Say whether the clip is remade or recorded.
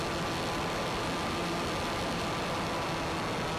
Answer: recorded